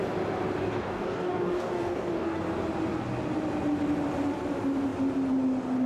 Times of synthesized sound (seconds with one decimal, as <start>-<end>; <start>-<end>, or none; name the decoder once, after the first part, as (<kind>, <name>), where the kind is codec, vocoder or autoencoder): 0.6-2.4 (codec, DAC)